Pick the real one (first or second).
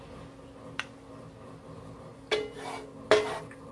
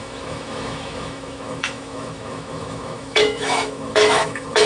first